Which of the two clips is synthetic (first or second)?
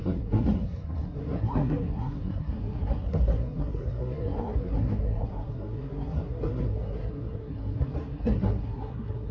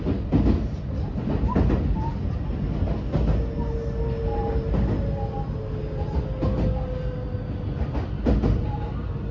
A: first